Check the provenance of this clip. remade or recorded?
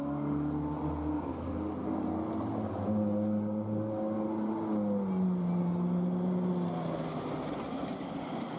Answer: recorded